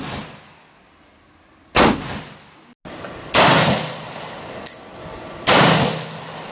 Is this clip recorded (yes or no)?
yes